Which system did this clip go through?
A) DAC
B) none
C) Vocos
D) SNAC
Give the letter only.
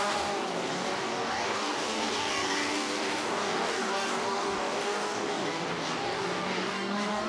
A